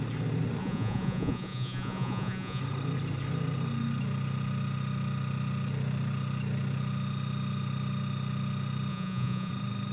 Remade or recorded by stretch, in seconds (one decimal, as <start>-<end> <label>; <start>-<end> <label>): 0.0-0.6 recorded; 0.6-2.6 remade; 2.6-8.9 recorded; 8.9-9.5 remade; 9.5-9.9 recorded